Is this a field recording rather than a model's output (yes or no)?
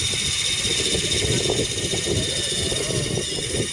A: yes